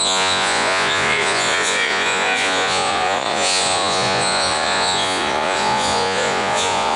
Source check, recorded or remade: remade